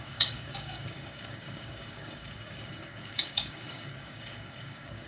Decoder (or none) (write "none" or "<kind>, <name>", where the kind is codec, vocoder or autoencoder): codec, DAC